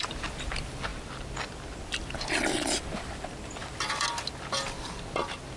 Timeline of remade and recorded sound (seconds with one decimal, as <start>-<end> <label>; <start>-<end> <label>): 0.0-5.6 recorded